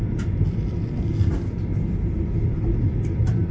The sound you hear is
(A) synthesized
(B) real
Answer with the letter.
B